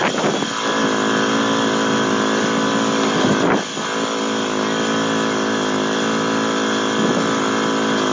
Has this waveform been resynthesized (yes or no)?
no